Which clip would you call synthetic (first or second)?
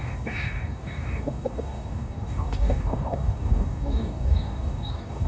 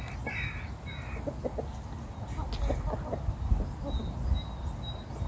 first